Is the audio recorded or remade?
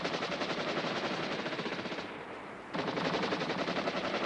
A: remade